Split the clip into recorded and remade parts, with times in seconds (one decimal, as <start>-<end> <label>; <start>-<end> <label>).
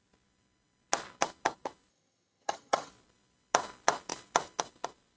0.0-1.9 recorded; 1.9-2.9 remade; 2.9-5.2 recorded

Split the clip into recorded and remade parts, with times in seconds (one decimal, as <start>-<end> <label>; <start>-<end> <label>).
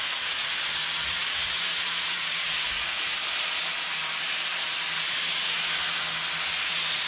0.0-0.4 remade; 0.4-1.1 recorded; 1.1-3.1 remade; 3.1-7.1 recorded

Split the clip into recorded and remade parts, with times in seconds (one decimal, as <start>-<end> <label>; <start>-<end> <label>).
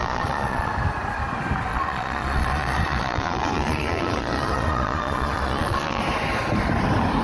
0.0-0.7 remade; 0.7-1.7 recorded; 1.7-6.0 remade; 6.0-7.2 recorded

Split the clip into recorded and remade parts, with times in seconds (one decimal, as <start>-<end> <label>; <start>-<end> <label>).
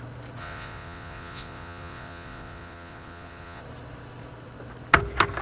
0.0-0.4 recorded; 0.4-3.6 remade; 3.6-5.4 recorded